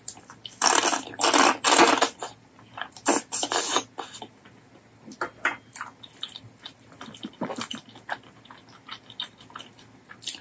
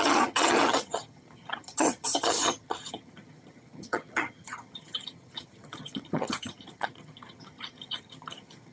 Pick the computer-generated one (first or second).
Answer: second